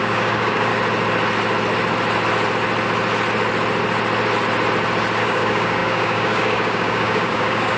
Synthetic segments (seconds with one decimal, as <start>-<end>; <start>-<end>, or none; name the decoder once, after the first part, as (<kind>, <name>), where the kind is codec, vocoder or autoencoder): 0.0-0.7 (codec, DAC); 5.2-7.8